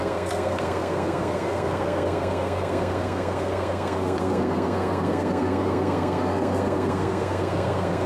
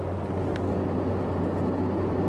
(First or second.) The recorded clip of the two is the second